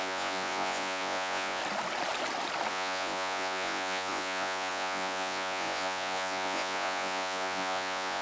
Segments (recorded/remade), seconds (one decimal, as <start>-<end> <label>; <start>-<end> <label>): 0.0-1.6 remade; 1.6-2.7 recorded; 2.7-8.2 remade